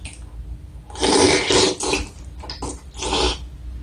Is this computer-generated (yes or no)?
no